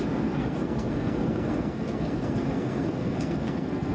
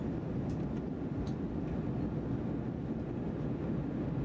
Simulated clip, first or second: first